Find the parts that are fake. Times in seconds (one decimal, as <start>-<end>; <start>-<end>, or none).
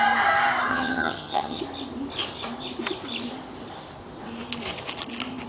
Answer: 0.7-1.6